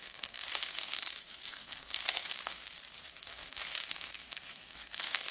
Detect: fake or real fake